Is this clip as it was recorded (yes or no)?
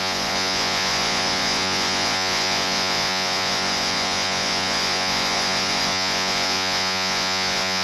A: no